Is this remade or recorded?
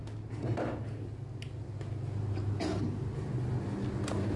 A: recorded